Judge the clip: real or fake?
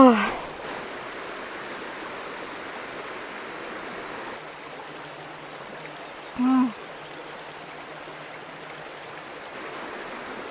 real